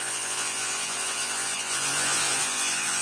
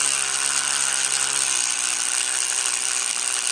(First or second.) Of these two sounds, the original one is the second